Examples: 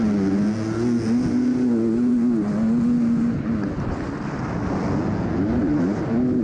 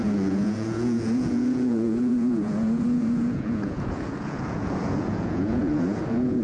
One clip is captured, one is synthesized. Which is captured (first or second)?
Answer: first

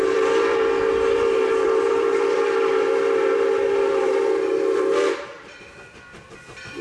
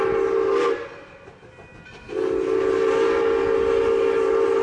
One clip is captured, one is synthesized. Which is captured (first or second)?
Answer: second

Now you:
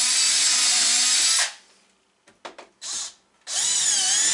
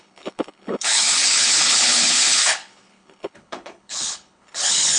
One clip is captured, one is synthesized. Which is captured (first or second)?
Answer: first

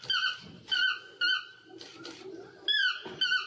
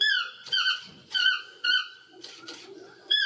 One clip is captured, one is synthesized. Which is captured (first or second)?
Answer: first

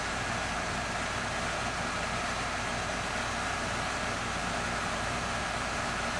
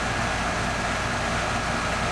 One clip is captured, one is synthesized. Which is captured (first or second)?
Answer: second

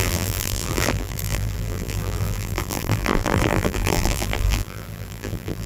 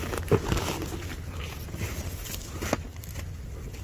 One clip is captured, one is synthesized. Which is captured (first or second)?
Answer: second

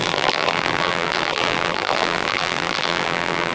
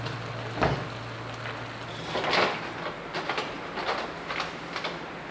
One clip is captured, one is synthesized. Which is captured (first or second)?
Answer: second